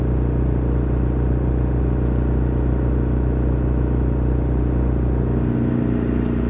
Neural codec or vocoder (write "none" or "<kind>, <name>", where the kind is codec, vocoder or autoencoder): none